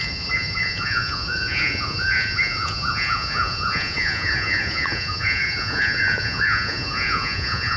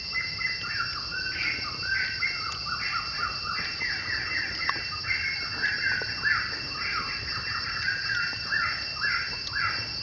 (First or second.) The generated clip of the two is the first